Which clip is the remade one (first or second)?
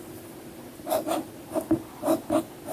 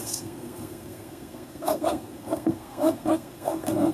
second